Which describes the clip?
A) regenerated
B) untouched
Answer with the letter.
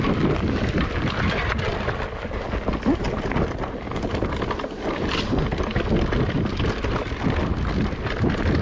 B